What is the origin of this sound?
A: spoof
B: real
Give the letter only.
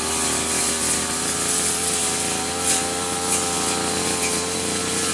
B